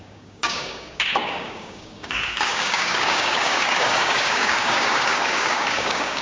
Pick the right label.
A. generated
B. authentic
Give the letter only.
A